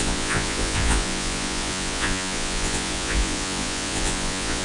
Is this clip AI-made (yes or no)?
yes